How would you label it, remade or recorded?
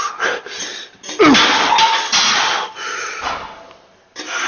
recorded